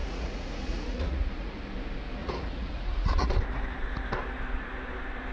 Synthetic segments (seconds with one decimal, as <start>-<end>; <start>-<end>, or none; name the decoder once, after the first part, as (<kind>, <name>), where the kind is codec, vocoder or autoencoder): 0.0-1.6 (vocoder, Vocos); 2.2-3.3